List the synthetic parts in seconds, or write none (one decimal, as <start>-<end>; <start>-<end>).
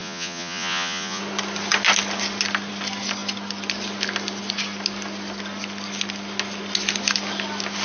0.0-1.2